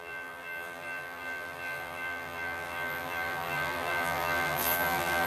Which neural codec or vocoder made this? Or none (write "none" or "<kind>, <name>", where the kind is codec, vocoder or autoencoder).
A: vocoder, BigVGAN v2